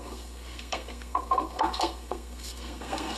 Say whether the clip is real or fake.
fake